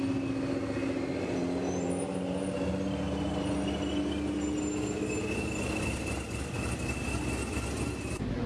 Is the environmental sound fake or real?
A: real